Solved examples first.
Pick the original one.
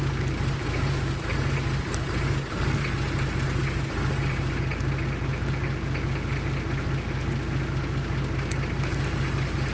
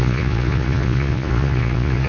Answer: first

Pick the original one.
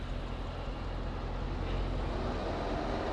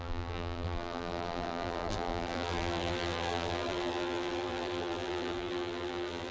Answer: first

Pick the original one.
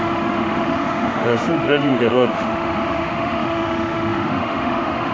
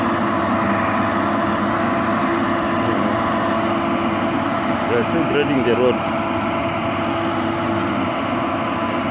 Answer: second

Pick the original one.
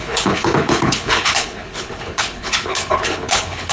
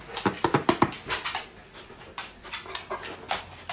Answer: second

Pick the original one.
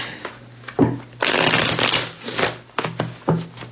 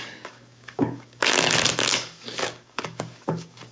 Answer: first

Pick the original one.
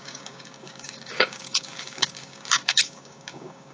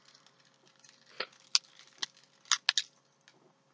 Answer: second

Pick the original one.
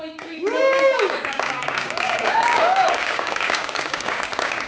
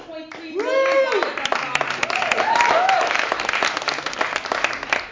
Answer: second